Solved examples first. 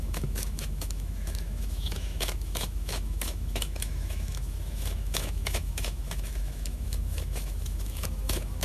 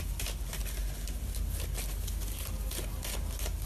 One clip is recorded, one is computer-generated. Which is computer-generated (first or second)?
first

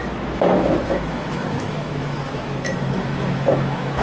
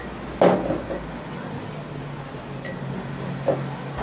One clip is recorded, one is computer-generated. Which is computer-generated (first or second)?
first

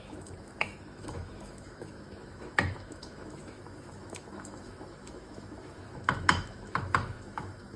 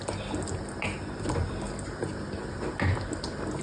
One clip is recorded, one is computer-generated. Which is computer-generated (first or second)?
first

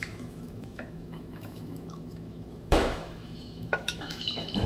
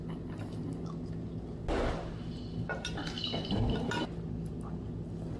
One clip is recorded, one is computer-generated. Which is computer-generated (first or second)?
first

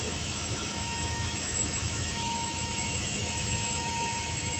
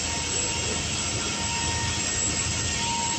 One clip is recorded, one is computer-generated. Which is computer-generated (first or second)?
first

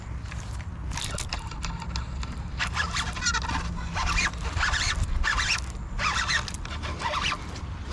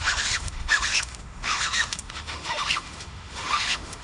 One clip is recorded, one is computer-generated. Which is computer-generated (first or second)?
second